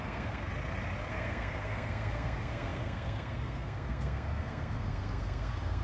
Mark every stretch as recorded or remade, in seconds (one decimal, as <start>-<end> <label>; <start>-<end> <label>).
0.0-0.5 remade; 0.5-1.1 recorded; 1.1-5.8 remade